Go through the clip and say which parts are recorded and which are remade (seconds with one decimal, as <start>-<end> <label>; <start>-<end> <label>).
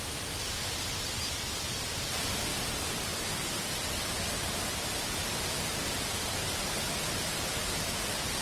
0.0-8.4 recorded